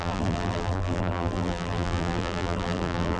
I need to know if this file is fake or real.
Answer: fake